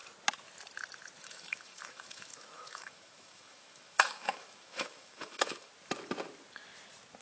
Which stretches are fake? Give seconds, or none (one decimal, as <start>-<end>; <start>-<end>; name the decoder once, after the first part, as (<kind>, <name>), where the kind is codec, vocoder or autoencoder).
1.2-5.7 (autoencoder, DAC-VAE)